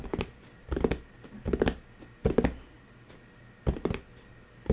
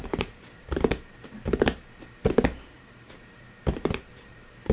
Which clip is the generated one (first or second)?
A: second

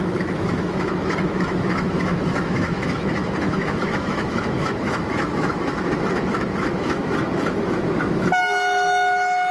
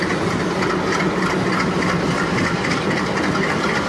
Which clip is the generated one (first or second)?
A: first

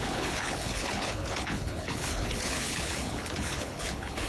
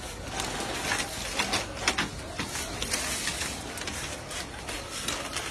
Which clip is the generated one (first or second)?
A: first